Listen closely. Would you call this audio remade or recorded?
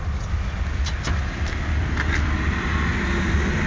recorded